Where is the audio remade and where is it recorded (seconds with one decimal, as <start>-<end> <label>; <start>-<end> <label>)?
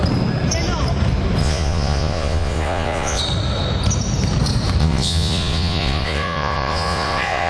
0.0-1.4 recorded; 1.4-3.2 remade; 3.2-4.8 recorded; 4.8-7.5 remade